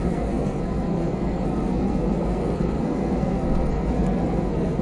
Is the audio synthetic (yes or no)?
yes